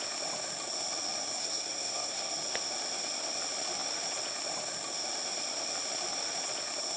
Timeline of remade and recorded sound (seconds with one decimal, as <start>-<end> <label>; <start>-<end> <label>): 0.0-1.4 recorded; 1.4-2.3 remade; 2.3-7.0 recorded